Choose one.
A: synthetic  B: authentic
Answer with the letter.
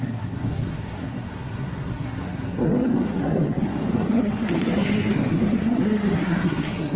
A